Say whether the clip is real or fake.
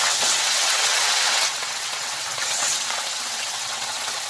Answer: fake